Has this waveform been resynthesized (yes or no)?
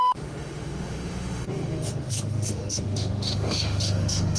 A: yes